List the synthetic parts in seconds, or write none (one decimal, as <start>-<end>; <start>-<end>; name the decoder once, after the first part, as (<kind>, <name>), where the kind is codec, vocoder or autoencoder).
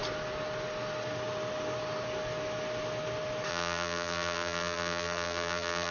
3.5-5.9 (vocoder, BigVGAN v2)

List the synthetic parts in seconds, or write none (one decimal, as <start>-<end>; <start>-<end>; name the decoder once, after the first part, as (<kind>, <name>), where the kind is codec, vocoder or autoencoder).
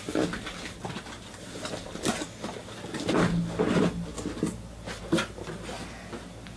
none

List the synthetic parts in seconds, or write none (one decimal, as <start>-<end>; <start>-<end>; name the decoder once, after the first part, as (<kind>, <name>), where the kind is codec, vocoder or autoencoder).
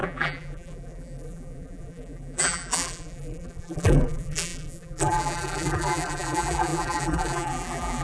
0.0-8.0 (vocoder, BigVGAN v2)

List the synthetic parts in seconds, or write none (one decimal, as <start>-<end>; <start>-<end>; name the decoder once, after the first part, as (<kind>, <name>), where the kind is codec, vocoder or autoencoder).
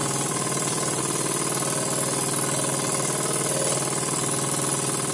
0.0-1.0 (vocoder, BigVGAN v2)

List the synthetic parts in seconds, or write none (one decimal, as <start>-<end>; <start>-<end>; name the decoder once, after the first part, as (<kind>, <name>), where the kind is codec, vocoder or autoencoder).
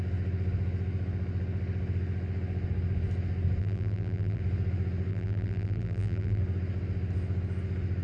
3.6-4.4 (vocoder, BigVGAN v2); 5.1-6.4